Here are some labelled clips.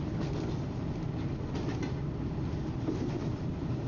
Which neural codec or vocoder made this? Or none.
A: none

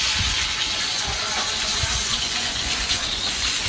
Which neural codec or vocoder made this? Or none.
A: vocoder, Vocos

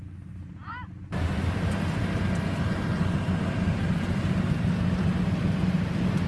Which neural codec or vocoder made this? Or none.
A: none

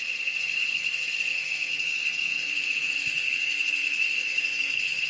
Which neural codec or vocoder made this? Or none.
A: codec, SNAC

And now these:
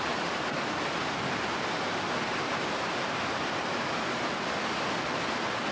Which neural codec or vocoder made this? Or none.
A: none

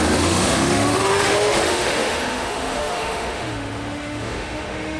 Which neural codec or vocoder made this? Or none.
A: autoencoder, DAC-VAE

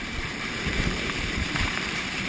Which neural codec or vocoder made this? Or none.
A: vocoder, BigVGAN v2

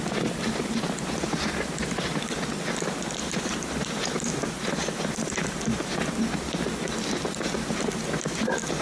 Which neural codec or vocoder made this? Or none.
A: vocoder, BigVGAN v2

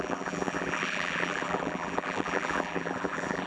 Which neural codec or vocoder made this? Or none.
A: vocoder, BigVGAN v2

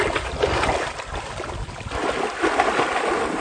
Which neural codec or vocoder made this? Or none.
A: none